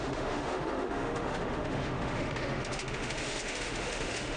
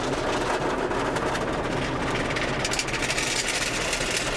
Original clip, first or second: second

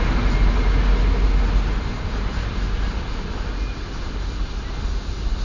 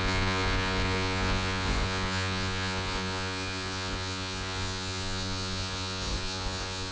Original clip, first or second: first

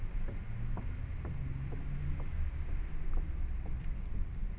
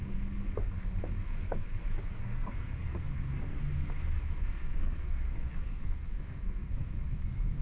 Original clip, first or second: first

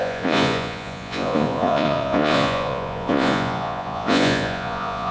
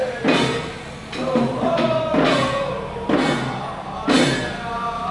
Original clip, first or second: second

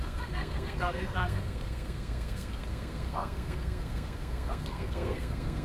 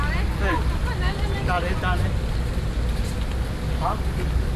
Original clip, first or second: second